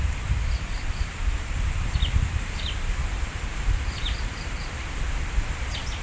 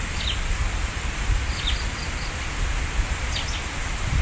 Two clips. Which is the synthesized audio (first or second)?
first